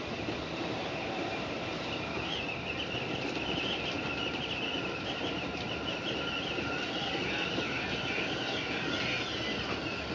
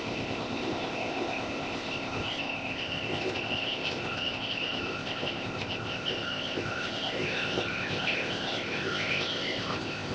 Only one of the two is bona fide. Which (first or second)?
first